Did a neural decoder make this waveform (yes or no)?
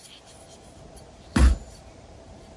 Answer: no